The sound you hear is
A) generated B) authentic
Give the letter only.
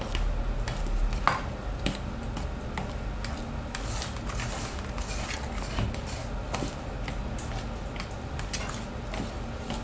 B